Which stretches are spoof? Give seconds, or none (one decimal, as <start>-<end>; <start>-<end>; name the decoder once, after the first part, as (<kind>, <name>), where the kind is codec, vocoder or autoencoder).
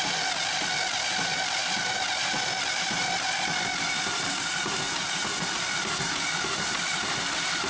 none